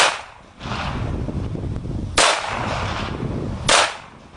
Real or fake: real